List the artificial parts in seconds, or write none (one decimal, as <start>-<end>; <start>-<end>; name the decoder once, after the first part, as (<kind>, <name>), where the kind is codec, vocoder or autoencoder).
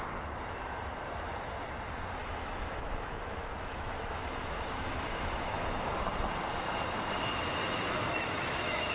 2.2-5.9 (autoencoder, DAC-VAE); 7.6-8.9